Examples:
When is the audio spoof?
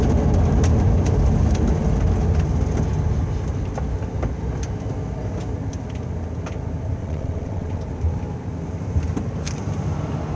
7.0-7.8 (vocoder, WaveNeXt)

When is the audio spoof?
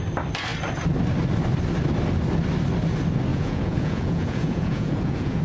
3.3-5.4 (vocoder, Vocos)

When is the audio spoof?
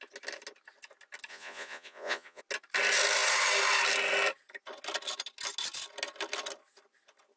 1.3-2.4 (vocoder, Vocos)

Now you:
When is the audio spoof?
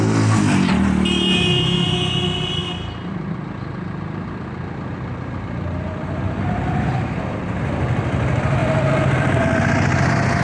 none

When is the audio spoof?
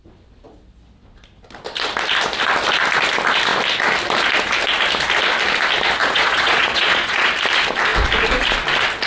6.0-7.3 (vocoder, Vocos)